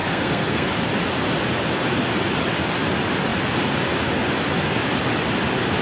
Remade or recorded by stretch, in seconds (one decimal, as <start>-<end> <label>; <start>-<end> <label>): 0.0-0.7 remade; 0.7-5.8 recorded